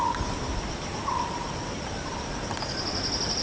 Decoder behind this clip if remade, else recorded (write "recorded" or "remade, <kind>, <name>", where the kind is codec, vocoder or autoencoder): recorded